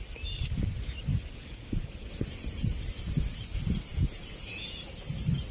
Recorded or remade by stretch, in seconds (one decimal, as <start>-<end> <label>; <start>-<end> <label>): 0.0-1.1 recorded; 1.1-2.9 remade; 2.9-3.9 recorded; 3.9-4.9 remade; 4.9-5.5 recorded